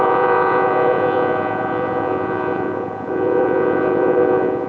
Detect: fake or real fake